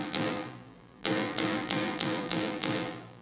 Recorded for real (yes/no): no